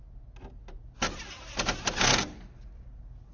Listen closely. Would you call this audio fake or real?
real